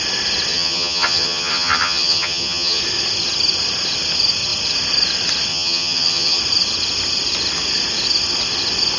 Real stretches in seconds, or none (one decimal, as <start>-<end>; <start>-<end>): 0.0-0.5; 2.8-5.5; 6.4-9.0